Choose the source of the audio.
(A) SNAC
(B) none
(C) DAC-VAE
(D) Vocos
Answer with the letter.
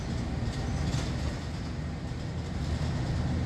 B